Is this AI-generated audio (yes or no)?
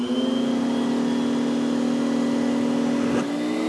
no